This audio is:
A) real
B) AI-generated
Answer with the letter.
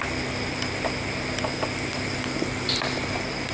A